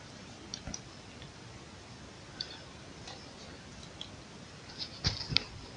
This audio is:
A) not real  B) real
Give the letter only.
B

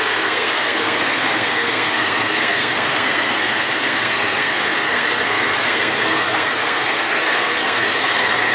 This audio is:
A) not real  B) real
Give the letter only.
A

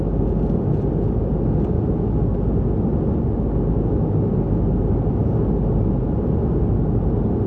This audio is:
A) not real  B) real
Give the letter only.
B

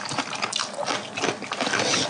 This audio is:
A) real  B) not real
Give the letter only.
A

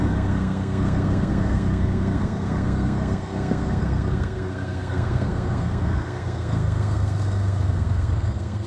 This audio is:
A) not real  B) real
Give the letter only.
A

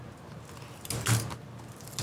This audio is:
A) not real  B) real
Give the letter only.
B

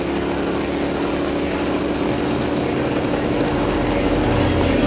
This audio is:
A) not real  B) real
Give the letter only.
B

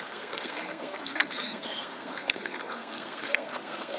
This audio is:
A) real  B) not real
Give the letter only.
B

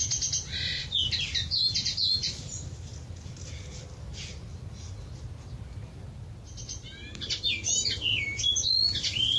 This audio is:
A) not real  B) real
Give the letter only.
B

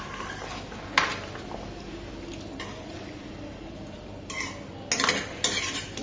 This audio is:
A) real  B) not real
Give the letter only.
A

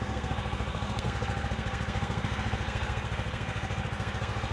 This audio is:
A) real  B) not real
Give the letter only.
B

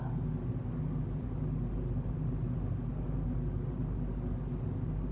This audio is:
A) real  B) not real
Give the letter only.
A